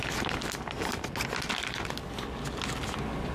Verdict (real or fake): real